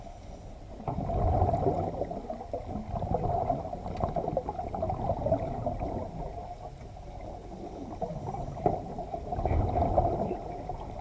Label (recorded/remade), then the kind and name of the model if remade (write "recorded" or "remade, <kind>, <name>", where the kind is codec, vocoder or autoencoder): recorded